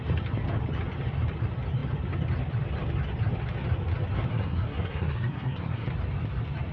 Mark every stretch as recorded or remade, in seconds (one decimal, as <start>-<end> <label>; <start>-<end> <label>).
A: 0.0-4.3 recorded; 4.3-5.9 remade; 5.9-6.7 recorded